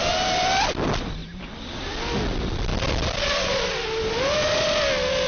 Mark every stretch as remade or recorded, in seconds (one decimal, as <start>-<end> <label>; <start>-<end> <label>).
0.0-5.3 recorded